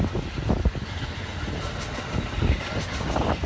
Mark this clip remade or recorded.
recorded